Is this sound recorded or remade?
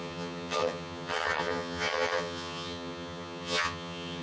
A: remade